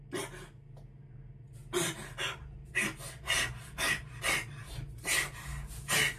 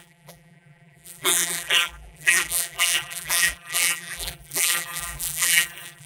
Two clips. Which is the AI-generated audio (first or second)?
second